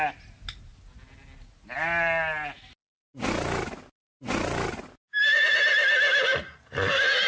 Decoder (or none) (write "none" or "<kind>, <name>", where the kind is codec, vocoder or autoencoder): none